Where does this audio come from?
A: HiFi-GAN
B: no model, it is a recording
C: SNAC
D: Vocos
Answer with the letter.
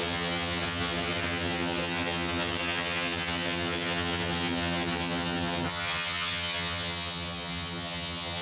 A